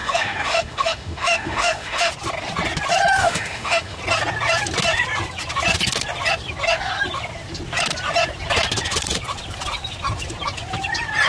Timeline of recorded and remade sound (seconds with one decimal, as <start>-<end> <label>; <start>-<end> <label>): 0.0-2.1 remade; 2.1-3.2 recorded; 3.2-4.0 remade; 4.0-11.3 recorded